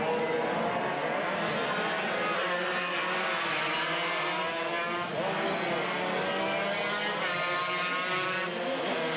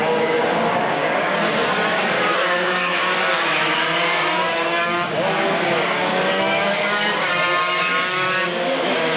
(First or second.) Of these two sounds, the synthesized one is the second